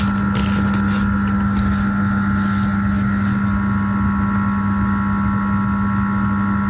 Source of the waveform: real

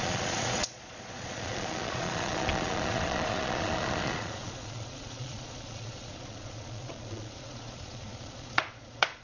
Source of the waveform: fake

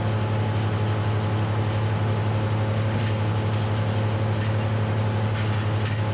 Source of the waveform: real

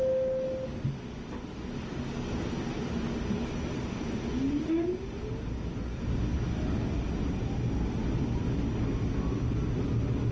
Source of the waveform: real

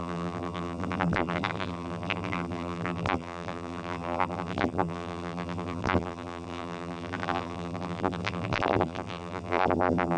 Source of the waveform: fake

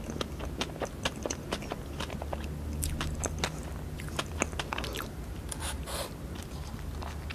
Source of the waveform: real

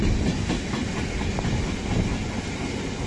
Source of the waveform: real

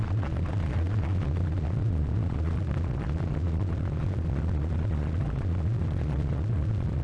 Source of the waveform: fake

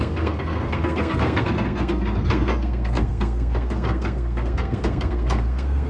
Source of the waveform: fake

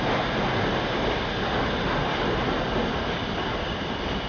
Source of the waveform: real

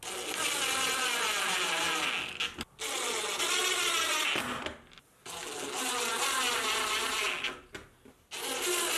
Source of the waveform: real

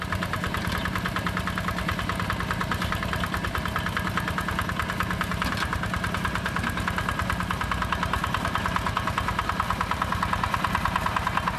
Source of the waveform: real